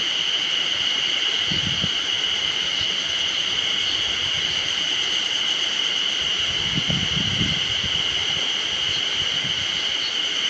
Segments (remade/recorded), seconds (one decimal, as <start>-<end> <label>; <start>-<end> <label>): 0.0-10.5 recorded